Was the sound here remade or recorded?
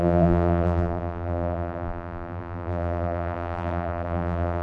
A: remade